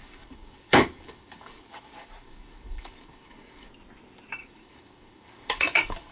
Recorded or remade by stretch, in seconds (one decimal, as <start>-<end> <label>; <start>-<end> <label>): 0.0-3.7 remade; 3.7-4.4 recorded; 4.4-6.1 remade